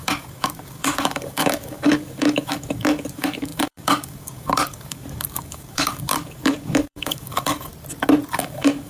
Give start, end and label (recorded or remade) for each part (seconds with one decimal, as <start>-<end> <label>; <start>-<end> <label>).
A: 0.0-7.7 remade; 7.7-8.3 recorded; 8.3-8.9 remade